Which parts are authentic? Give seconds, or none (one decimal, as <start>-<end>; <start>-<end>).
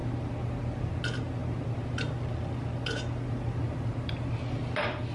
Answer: 0.0-5.1